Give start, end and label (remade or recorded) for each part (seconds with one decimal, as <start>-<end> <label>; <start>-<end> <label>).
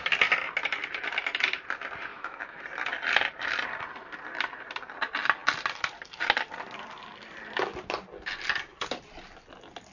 0.0-2.1 recorded; 2.1-2.6 remade; 2.6-9.9 recorded